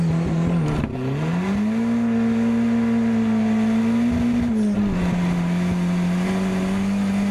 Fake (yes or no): no